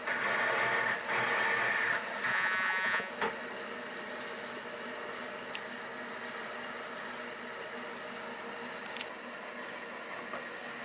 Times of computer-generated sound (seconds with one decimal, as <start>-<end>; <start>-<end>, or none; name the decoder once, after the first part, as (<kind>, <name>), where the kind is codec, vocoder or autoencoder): 2.3-3.1 (vocoder, Vocos)